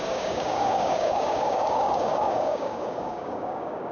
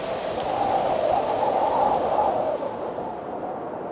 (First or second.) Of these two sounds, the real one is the second